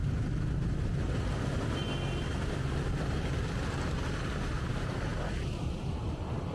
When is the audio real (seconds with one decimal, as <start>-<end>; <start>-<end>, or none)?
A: 0.0-6.5